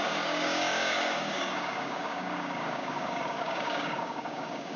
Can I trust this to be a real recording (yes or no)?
no